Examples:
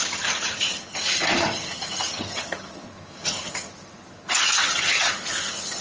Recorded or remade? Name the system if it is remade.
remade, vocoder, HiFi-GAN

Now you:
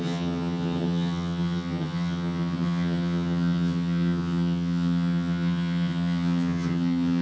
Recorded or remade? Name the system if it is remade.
remade, vocoder, HiFi-GAN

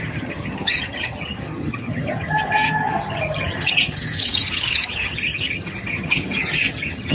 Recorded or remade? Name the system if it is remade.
remade, vocoder, HiFi-GAN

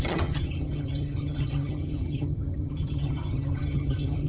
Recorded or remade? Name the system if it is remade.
remade, vocoder, HiFi-GAN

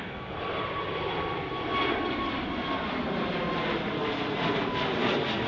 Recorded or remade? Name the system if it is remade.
recorded